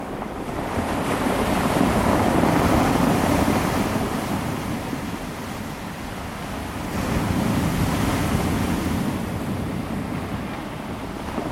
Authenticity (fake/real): real